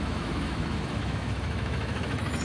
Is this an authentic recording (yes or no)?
no